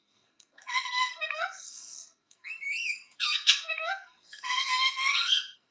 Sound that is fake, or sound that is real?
fake